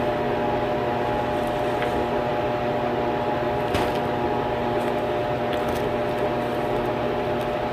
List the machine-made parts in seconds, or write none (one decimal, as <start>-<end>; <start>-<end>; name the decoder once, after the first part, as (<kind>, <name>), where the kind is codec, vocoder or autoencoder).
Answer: none